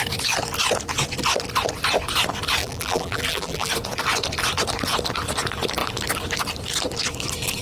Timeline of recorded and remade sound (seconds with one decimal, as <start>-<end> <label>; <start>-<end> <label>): 0.0-2.6 recorded; 2.6-3.7 remade; 3.7-7.6 recorded

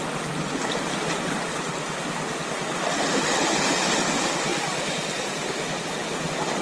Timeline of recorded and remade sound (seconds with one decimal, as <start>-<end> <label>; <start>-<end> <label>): 0.0-6.6 recorded

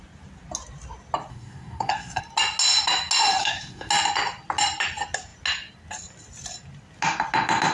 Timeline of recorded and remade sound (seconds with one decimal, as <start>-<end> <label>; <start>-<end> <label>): 0.0-1.3 recorded; 1.3-2.2 remade; 2.2-3.4 recorded; 3.4-3.9 remade; 3.9-7.7 recorded

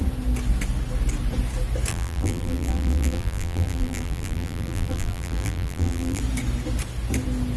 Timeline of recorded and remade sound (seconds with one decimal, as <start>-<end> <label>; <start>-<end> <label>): 0.0-1.9 recorded; 1.9-6.2 remade; 6.2-7.6 recorded

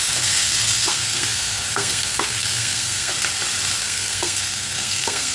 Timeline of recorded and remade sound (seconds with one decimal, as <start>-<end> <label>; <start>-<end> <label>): 0.0-3.1 remade; 3.1-3.8 recorded; 3.8-5.3 remade

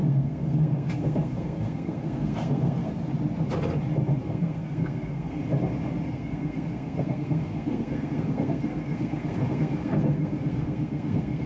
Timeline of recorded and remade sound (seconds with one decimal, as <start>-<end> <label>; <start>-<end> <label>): 0.0-2.9 remade; 2.9-4.2 recorded; 4.2-5.4 remade; 5.4-6.1 recorded; 6.1-11.5 remade

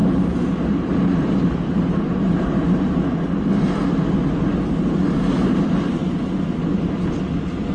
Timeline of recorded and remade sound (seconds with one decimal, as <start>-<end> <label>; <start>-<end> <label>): 0.0-3.0 remade; 3.0-6.0 recorded; 6.0-7.1 remade; 7.1-7.7 recorded